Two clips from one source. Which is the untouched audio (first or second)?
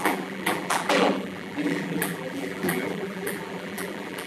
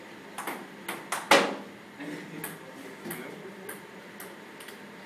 second